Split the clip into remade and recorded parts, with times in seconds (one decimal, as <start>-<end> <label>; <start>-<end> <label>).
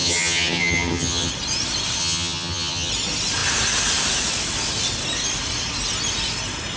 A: 0.0-1.3 remade; 1.3-2.0 recorded; 2.0-2.9 remade; 2.9-6.8 recorded